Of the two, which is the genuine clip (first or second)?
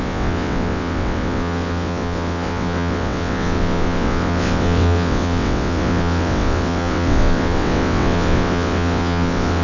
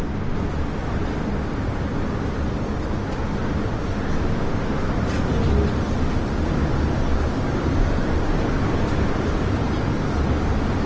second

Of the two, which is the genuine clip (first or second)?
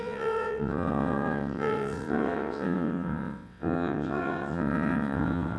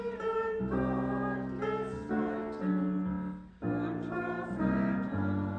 second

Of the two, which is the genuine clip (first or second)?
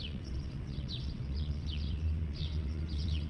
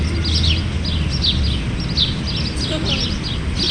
second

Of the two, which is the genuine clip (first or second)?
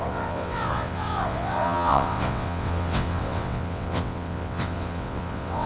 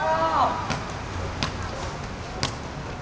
second